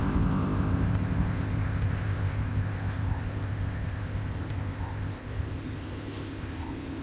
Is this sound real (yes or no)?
no